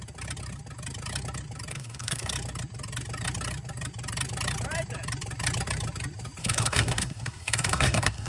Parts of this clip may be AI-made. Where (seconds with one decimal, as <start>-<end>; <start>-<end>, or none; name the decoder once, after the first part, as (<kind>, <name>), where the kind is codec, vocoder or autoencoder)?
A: 1.7-2.3 (codec, SNAC); 6.4-8.3